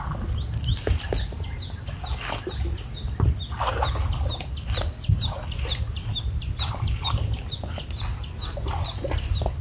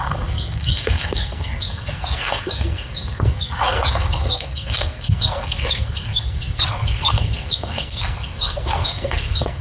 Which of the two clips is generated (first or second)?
second